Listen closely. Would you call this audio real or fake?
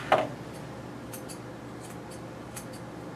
real